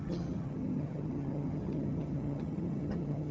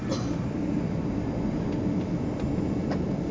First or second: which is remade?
first